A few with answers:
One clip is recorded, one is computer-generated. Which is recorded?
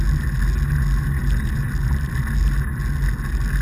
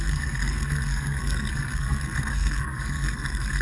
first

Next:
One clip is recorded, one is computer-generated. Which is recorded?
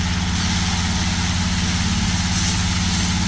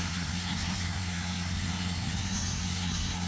first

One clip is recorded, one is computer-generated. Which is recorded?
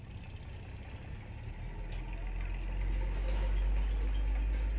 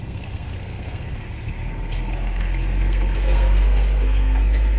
first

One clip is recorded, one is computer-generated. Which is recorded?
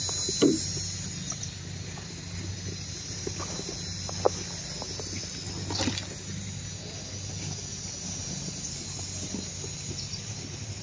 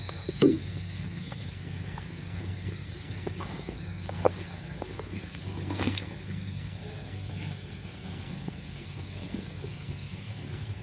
first